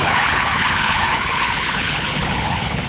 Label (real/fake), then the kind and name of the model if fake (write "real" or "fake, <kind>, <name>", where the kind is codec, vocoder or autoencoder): fake, codec, HILCodec